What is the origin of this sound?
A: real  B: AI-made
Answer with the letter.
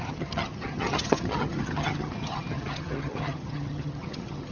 B